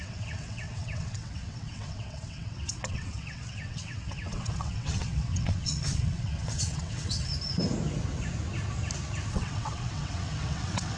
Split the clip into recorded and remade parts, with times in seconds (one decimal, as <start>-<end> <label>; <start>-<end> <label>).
0.0-7.3 remade; 7.3-9.3 recorded; 9.3-11.0 remade